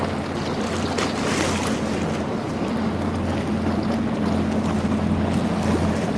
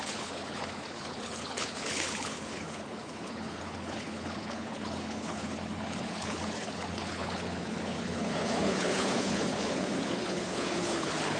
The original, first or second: first